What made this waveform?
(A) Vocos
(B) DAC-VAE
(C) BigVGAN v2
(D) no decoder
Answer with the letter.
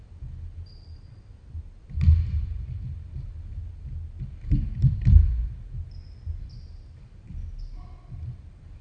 D